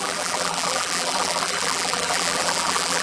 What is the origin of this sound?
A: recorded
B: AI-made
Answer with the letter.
B